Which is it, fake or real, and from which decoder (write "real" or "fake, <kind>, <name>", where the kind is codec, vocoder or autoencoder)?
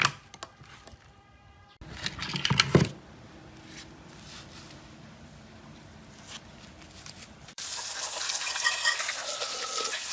real